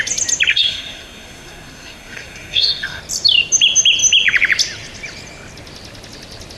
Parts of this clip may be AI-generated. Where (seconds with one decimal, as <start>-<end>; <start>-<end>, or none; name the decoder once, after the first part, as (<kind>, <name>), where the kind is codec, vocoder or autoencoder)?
0.5-3.0 (codec, SNAC)